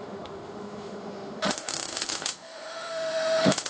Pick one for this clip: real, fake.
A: fake